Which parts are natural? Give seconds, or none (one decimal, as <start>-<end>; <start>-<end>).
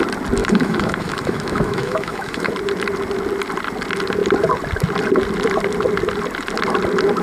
0.0-0.4; 2.5-7.2